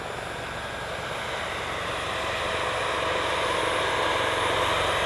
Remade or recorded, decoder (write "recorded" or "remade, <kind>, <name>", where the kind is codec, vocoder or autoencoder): recorded